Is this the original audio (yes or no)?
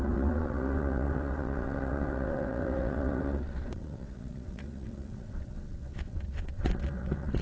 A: no